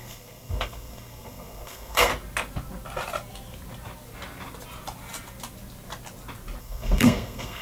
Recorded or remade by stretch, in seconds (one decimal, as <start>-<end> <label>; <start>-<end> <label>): 0.0-2.1 remade; 2.1-6.6 recorded; 6.6-7.6 remade